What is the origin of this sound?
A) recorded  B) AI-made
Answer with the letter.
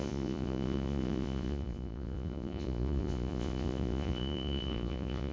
B